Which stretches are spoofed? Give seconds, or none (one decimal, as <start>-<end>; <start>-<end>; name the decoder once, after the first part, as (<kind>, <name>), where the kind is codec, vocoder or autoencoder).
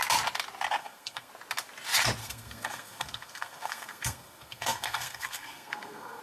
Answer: 0.8-1.3 (codec, SNAC); 2.2-6.2